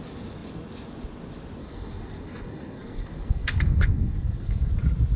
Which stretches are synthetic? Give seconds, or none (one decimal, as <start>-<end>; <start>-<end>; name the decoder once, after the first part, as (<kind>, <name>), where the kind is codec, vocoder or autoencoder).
1.6-4.7 (codec, SNAC)

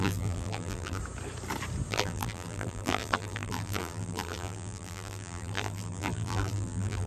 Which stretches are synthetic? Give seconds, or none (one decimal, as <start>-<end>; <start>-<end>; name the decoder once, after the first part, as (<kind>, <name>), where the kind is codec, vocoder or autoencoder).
0.0-1.0 (vocoder, BigVGAN v2); 1.9-7.1

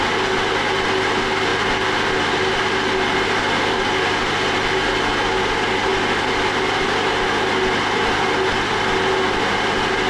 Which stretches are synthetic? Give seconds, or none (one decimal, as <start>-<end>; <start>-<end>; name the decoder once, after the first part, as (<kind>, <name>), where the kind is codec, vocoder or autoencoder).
none

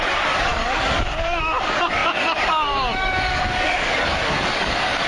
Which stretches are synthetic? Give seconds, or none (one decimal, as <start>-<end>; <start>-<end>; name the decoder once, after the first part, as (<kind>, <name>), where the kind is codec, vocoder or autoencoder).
0.0-5.1 (codec, DAC)

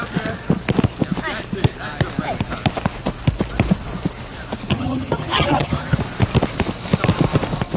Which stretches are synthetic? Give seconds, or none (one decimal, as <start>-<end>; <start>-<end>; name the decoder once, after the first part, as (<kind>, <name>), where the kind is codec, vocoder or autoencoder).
4.7-6.0 (vocoder, HiFi-GAN)

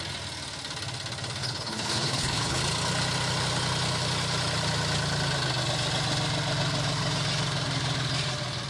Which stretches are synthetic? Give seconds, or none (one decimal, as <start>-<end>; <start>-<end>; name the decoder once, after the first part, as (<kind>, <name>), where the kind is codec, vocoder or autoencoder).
1.4-2.6 (codec, HILCodec)